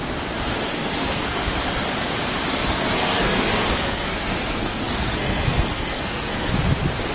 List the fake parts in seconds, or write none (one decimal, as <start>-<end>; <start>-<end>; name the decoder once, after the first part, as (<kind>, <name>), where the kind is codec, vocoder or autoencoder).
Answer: 0.7-1.5 (codec, SNAC); 2.5-6.5